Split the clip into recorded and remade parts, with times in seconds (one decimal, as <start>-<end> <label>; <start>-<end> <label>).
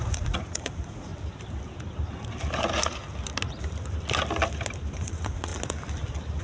0.0-1.1 remade; 1.1-4.9 recorded; 4.9-5.5 remade; 5.5-6.4 recorded